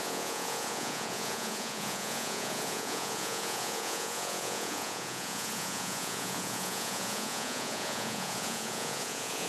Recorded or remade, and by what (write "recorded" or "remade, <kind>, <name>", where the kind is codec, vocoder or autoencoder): remade, vocoder, Vocos